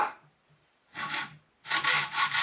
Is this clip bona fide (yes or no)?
yes